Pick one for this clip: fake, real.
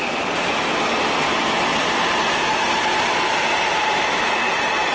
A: fake